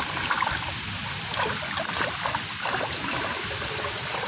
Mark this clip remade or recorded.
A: recorded